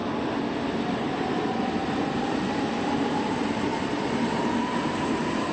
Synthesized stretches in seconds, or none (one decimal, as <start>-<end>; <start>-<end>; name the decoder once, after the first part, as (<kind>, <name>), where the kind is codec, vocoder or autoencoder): 2.2-3.7 (vocoder, BigVGAN v2); 4.8-5.5